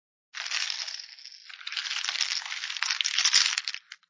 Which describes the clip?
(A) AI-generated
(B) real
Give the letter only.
B